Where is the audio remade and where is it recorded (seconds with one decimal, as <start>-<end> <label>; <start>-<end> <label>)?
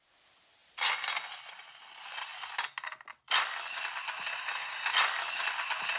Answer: 0.0-6.0 recorded